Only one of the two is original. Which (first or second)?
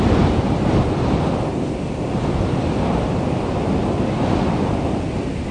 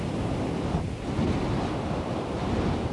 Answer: first